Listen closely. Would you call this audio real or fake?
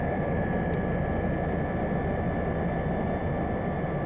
fake